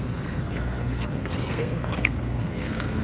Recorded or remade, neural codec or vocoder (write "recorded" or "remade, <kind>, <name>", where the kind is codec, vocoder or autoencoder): remade, codec, SNAC